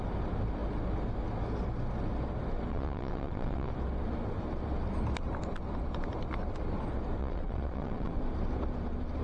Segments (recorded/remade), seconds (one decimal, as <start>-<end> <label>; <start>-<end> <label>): 0.0-2.7 recorded; 2.7-3.7 remade; 3.7-7.2 recorded; 7.2-8.2 remade; 8.2-9.2 recorded